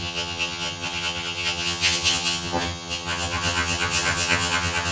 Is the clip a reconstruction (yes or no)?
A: yes